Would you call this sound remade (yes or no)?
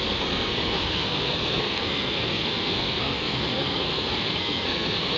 yes